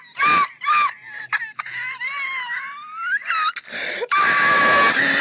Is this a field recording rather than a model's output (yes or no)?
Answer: yes